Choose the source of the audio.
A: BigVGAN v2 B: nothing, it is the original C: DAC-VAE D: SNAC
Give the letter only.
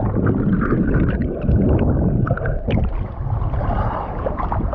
B